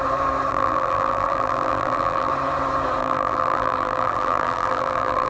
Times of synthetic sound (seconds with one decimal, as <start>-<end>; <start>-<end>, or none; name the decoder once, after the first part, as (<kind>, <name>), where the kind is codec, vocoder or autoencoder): 0.5-2.3 (vocoder, BigVGAN v2); 3.0-5.3

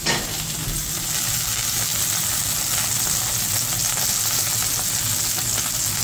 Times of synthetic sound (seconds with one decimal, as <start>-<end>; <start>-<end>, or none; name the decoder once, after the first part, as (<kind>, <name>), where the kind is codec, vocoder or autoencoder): none

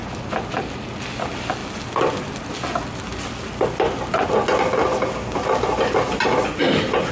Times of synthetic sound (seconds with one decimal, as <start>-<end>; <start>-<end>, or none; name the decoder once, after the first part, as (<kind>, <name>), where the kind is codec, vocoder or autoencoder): none

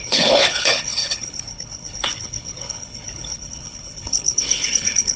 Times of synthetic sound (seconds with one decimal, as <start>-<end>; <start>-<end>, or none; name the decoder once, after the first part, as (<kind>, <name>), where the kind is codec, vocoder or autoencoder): 0.0-5.2 (codec, HILCodec)

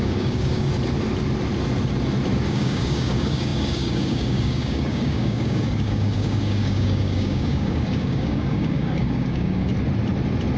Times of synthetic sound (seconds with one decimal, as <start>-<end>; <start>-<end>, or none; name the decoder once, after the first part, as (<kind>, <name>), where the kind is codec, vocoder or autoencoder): 0.0-0.7 (codec, DAC); 2.5-9.7

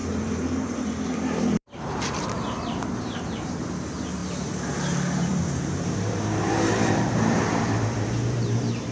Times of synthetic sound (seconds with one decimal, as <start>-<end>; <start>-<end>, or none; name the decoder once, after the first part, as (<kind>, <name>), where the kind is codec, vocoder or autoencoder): 0.0-3.7 (vocoder, BigVGAN v2); 4.2-8.9

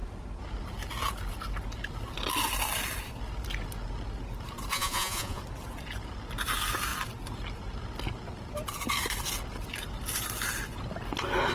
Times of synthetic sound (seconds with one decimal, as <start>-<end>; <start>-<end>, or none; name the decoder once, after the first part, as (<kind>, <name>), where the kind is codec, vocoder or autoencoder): 4.7-5.4 (vocoder, Vocos)

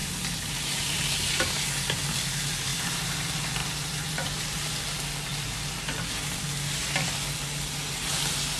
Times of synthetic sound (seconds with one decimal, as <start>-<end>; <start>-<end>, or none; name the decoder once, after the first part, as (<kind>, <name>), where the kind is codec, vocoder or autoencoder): 0.0-1.3 (vocoder, BigVGAN v2); 2.7-3.2; 3.6-4.7